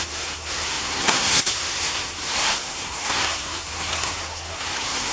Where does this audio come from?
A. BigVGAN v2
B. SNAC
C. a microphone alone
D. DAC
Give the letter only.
B